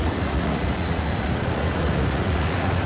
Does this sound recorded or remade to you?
remade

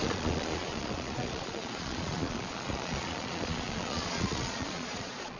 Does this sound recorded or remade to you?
remade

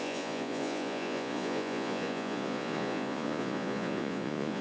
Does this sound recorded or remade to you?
remade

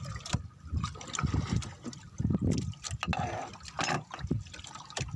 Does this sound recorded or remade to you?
recorded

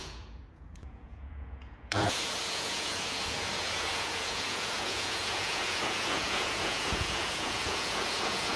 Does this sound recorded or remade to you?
remade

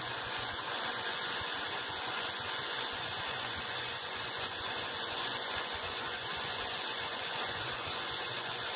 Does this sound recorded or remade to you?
remade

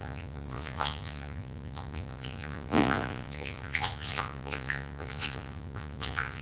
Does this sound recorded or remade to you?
remade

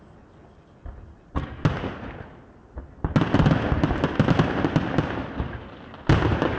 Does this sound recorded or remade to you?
recorded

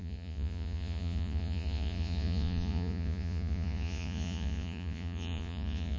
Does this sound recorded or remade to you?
remade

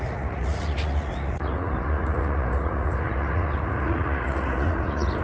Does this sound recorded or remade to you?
remade